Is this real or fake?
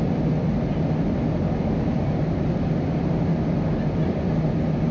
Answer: real